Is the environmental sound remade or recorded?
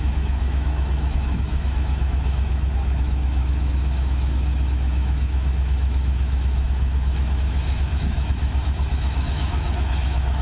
remade